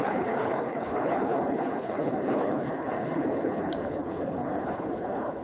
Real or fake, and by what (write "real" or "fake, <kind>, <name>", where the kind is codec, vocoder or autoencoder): fake, codec, HILCodec